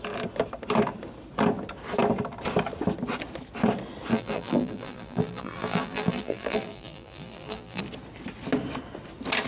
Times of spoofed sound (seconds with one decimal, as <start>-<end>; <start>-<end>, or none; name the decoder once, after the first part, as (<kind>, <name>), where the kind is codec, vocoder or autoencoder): 4.1-7.8 (vocoder, BigVGAN v2)